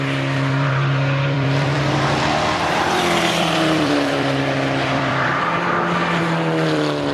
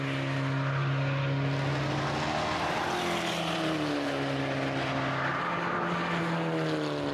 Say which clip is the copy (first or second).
first